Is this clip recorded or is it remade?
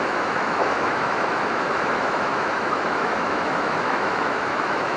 remade